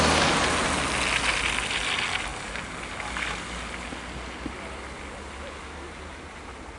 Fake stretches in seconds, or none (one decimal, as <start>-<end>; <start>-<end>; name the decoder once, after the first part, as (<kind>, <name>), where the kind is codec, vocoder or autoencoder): none

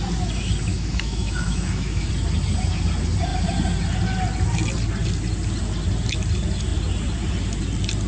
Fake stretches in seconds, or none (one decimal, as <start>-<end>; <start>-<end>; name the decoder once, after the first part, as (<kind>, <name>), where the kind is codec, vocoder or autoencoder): 0.7-2.1 (autoencoder, DAC-VAE)

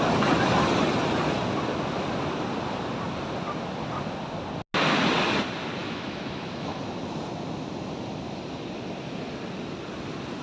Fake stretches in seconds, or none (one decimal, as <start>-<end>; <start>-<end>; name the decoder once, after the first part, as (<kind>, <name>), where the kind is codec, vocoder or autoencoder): 5.8-6.8 (autoencoder, DAC-VAE)

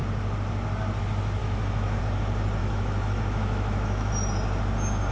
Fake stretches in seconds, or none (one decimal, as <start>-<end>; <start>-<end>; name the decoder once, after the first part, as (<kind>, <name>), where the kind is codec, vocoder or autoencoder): 1.4-2.0 (autoencoder, DAC-VAE); 2.6-4.1

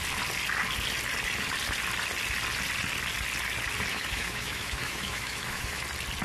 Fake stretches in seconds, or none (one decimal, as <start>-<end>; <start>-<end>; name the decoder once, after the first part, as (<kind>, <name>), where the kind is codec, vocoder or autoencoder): 3.9-5.8 (autoencoder, DAC-VAE)

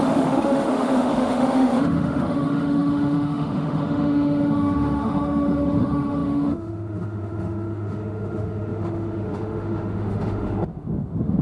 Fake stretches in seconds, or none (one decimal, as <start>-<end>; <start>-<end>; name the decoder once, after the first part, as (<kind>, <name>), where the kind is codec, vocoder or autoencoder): 0.0-11.4 (autoencoder, DAC-VAE)

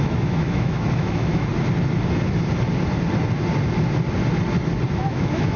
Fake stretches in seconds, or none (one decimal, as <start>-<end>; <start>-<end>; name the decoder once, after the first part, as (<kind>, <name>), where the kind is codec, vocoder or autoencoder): 0.0-1.5 (autoencoder, DAC-VAE); 4.9-5.6